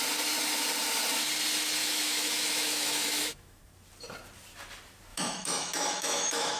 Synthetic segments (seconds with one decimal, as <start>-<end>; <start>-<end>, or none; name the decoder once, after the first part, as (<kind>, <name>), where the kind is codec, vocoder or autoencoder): 1.8-3.6 (autoencoder, DAC-VAE); 5.1-6.6